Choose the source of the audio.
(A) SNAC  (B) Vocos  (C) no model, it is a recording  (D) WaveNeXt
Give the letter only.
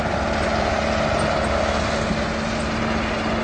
C